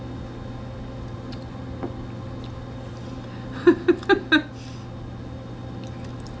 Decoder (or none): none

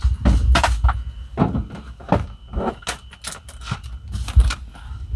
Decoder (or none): none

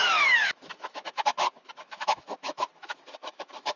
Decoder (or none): autoencoder, DAC-VAE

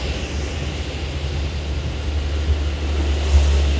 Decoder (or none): none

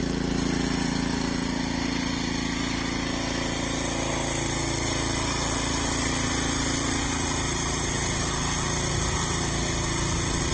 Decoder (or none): none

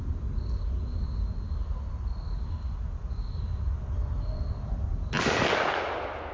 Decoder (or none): none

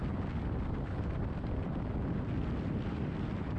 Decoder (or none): none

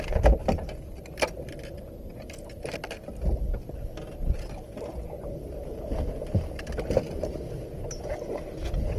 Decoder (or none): none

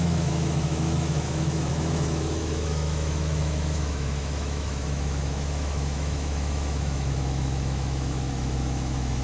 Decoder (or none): autoencoder, DAC-VAE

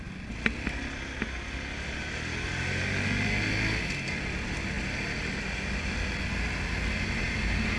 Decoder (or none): none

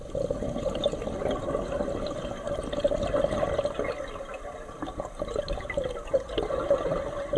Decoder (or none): none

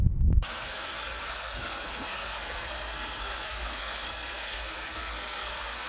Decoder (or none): codec, SNAC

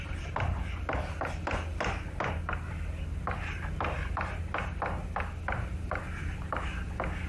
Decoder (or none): none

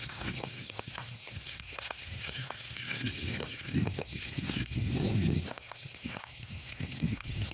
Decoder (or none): codec, SNAC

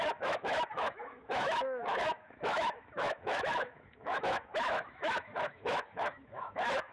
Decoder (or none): autoencoder, DAC-VAE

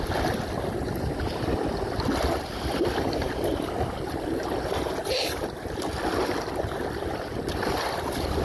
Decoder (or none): none